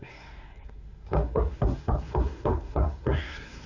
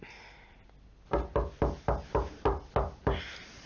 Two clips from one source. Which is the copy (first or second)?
first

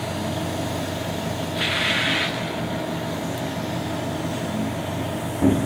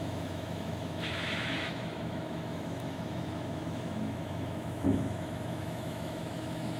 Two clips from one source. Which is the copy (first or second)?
second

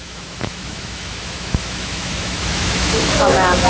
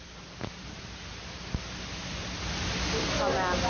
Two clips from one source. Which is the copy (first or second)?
first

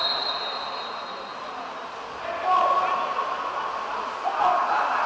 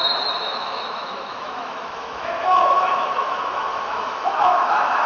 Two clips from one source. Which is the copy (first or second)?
second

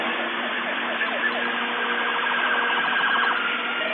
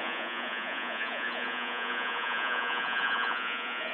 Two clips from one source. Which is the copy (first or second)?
second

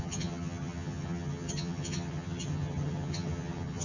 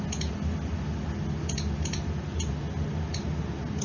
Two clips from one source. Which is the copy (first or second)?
first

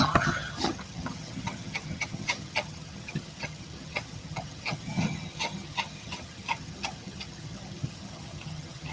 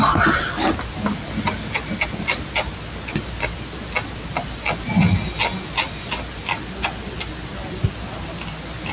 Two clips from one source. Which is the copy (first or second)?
first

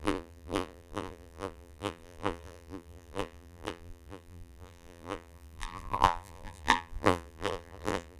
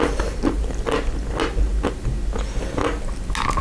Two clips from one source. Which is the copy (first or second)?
first